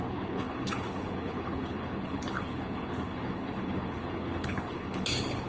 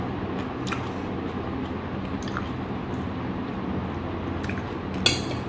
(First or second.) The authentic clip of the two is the second